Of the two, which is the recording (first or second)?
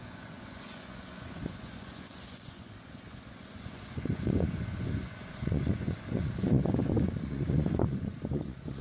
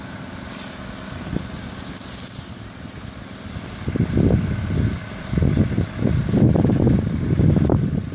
second